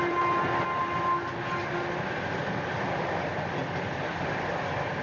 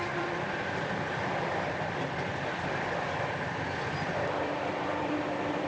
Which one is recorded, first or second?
first